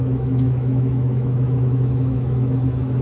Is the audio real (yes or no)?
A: no